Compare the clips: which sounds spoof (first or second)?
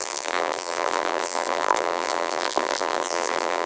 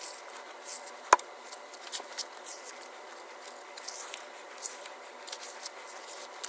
first